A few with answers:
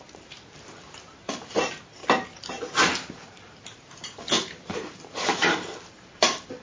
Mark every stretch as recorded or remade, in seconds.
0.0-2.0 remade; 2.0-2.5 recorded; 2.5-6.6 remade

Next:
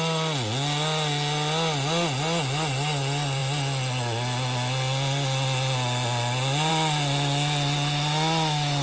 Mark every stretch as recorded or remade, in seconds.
0.0-8.8 recorded

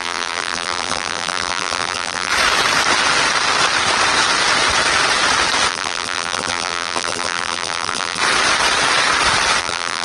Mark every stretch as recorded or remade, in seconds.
0.0-2.3 remade; 2.3-5.7 recorded; 5.7-8.2 remade; 8.2-9.6 recorded; 9.6-10.0 remade

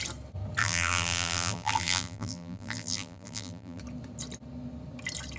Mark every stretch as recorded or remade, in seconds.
0.0-0.6 recorded; 0.6-3.8 remade; 3.8-5.4 recorded

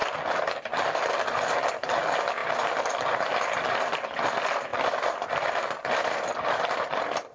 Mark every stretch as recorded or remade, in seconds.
0.0-0.5 remade; 0.5-7.3 recorded

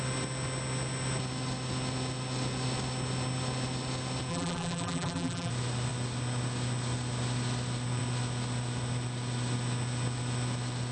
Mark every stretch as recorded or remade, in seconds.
0.0-4.3 recorded; 4.3-5.5 remade; 5.5-10.9 recorded

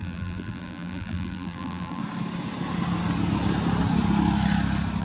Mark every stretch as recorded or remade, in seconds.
0.0-2.0 remade; 2.0-5.0 recorded

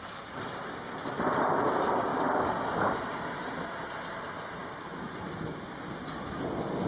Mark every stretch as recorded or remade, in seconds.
0.0-2.1 recorded; 2.1-3.1 remade; 3.1-4.6 recorded; 4.6-5.1 remade; 5.1-6.9 recorded